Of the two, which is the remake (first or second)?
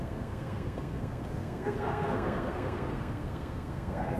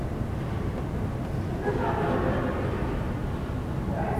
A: first